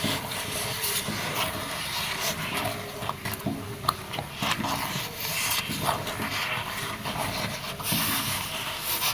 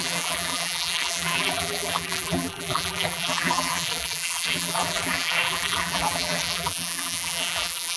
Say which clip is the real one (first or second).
first